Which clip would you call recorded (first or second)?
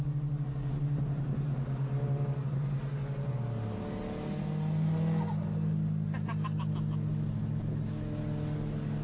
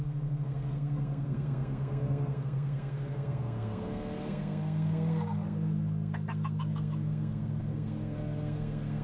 first